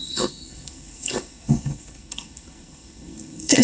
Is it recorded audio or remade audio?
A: remade